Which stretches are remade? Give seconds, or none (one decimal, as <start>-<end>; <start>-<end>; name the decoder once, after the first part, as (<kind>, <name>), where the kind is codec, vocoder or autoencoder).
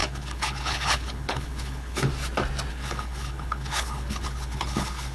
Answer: 0.0-2.1 (codec, HILCodec); 2.7-5.1